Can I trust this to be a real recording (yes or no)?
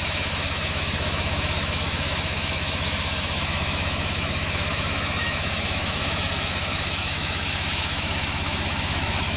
no